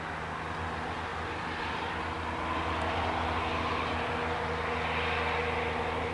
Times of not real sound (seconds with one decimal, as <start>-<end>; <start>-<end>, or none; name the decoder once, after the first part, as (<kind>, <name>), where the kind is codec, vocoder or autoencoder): none

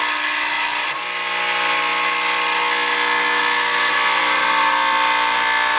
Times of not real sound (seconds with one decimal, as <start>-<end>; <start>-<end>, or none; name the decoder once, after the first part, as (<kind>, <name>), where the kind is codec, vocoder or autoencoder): none

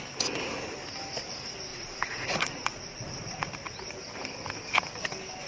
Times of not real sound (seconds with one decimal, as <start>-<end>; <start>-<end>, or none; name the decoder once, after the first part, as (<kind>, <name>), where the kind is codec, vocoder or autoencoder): 1.7-3.5 (vocoder, Vocos)

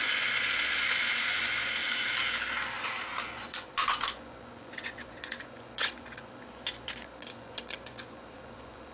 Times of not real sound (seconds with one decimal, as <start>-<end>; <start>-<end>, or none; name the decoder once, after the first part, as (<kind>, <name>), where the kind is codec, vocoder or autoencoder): 0.0-1.8 (vocoder, Vocos); 3.3-8.9

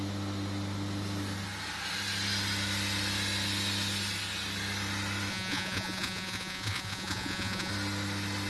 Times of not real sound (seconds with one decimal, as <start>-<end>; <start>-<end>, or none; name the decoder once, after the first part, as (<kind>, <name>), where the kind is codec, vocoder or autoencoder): 5.3-7.7 (vocoder, Vocos)

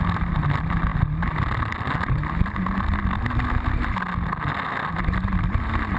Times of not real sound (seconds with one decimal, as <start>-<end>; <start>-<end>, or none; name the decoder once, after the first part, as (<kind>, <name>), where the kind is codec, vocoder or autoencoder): none

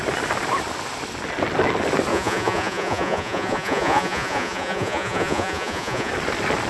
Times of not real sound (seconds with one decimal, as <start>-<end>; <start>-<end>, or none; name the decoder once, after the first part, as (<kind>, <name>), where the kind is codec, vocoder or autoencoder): 2.1-6.1 (vocoder, Vocos)

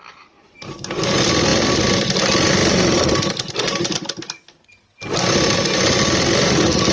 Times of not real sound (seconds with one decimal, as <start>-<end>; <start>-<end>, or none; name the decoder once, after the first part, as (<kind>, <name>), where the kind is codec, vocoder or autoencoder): none